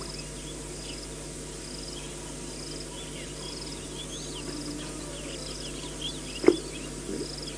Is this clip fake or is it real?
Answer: real